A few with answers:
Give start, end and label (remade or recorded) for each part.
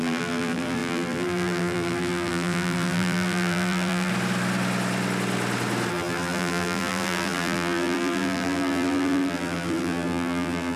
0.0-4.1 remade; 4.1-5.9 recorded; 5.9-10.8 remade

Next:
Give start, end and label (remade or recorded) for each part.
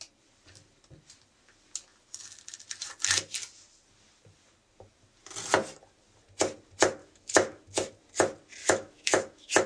0.0-7.0 recorded; 7.0-7.6 remade; 7.6-8.6 recorded; 8.6-9.7 remade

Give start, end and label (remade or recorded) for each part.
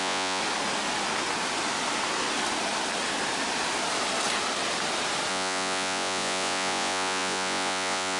0.0-0.4 remade; 0.4-5.3 recorded; 5.3-8.2 remade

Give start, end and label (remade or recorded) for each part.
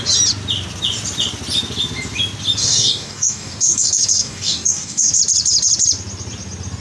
0.0-2.6 recorded; 2.6-5.2 remade; 5.2-6.8 recorded